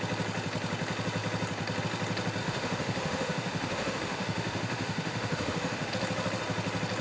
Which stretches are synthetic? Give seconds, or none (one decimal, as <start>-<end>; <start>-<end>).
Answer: 2.4-5.9